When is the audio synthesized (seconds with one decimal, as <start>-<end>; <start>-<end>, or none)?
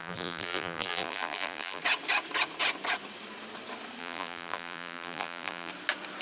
0.0-1.8; 4.0-5.7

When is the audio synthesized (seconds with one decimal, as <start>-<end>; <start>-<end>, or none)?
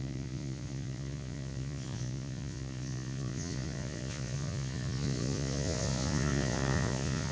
0.0-7.3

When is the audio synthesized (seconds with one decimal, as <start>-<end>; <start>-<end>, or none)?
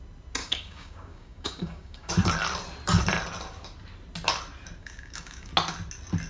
0.4-2.1; 4.8-5.5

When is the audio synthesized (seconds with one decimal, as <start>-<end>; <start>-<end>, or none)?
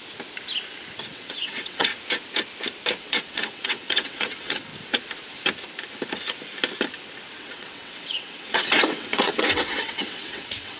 1.1-1.9; 3.0-4.7; 7.4-10.8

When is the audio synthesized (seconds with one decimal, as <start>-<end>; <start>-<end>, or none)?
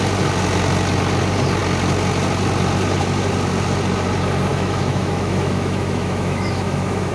4.5-7.1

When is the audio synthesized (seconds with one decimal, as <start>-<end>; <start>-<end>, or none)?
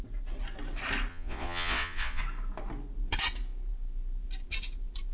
1.1-2.2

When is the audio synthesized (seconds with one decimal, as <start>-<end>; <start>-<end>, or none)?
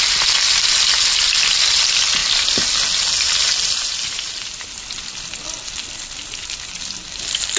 none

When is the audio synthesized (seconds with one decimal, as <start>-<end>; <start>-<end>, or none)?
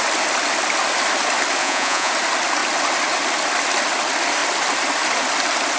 1.6-2.1